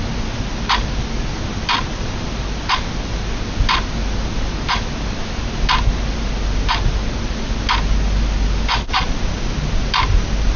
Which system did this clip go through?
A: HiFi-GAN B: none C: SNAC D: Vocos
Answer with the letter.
B